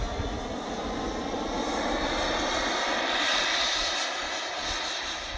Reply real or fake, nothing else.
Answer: real